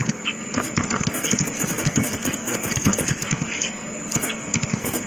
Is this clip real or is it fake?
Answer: fake